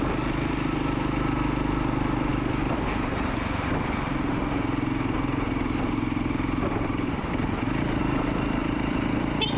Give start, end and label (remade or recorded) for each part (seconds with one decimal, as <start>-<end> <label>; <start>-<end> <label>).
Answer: 0.0-8.0 recorded; 8.0-9.6 remade